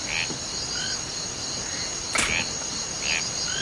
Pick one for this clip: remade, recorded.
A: recorded